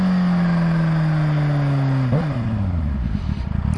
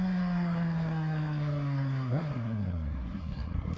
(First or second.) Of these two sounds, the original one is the first